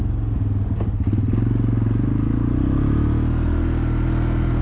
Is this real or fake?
real